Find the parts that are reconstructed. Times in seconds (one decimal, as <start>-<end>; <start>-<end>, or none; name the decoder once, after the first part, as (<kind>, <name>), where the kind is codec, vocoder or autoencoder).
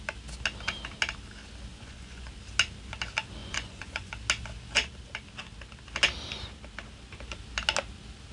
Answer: 1.7-2.3 (vocoder, Vocos); 3.4-4.1